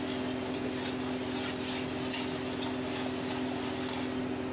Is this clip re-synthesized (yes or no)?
no